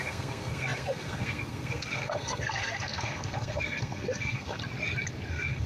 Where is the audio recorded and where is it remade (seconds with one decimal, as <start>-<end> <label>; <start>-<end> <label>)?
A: 0.0-4.6 remade; 4.6-5.3 recorded; 5.3-5.7 remade